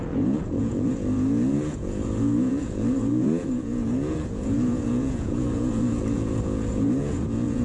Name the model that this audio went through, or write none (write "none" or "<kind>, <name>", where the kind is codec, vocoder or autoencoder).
vocoder, Vocos